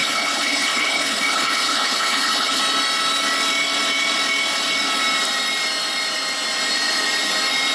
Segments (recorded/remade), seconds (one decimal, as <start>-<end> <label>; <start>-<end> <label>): 0.0-2.6 remade; 2.6-7.7 recorded